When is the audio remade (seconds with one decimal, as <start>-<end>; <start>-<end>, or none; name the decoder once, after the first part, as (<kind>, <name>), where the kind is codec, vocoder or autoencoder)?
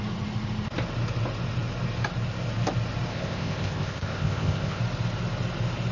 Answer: 3.1-4.8 (codec, ZipCodec)